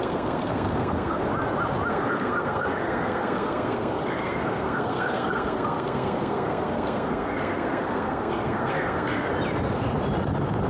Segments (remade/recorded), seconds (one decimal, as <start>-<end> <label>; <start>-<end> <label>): 0.0-1.2 remade; 1.2-1.9 recorded; 1.9-9.3 remade; 9.3-10.7 recorded